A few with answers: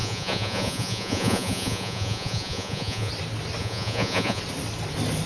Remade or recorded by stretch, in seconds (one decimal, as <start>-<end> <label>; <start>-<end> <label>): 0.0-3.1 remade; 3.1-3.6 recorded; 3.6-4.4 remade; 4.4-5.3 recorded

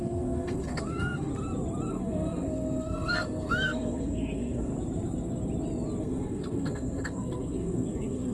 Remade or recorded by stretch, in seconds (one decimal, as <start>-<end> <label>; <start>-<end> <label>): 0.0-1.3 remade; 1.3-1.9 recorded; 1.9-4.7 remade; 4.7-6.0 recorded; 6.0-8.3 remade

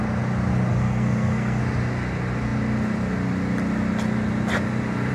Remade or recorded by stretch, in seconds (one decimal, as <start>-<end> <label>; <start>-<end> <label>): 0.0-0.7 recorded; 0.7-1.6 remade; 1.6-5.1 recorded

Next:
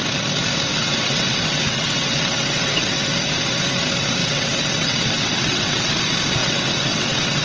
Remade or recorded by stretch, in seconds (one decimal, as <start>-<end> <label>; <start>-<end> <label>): 0.0-0.7 recorded; 0.7-3.1 remade; 3.1-4.2 recorded; 4.2-5.9 remade; 5.9-6.4 recorded; 6.4-7.4 remade

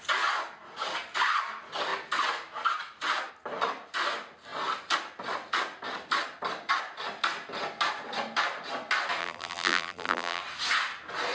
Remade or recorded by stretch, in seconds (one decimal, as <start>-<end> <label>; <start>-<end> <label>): 0.0-9.2 recorded; 9.2-10.4 remade; 10.4-11.3 recorded